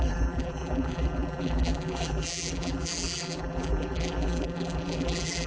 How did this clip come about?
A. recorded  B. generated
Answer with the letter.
B